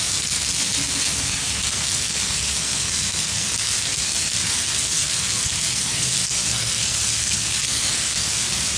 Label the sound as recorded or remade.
remade